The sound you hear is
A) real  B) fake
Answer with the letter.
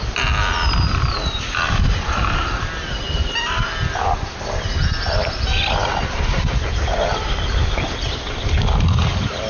A